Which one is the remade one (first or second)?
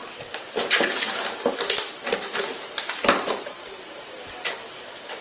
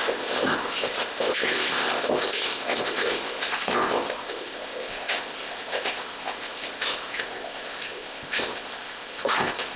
second